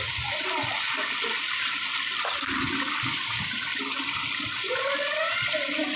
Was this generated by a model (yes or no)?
no